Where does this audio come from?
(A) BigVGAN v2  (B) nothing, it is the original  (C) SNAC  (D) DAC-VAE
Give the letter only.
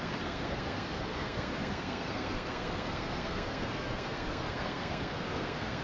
C